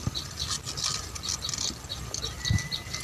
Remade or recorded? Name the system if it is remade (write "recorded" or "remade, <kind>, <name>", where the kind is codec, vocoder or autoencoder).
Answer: recorded